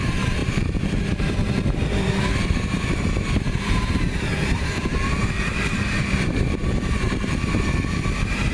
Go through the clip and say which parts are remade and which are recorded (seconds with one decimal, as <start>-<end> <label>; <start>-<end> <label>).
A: 0.0-8.5 remade